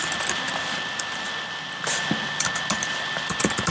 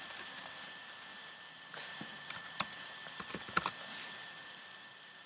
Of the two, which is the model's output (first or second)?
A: second